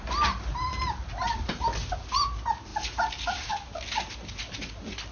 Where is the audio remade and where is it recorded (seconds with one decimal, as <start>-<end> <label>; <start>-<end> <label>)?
0.0-5.1 recorded